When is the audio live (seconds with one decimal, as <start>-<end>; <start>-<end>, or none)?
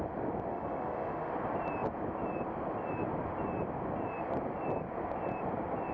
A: 0.0-0.5; 1.3-5.9